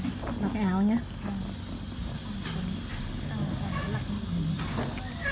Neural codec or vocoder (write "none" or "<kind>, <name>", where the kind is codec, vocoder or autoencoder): none